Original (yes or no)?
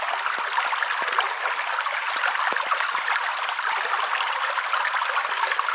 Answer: yes